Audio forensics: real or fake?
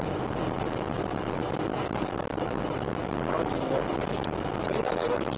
real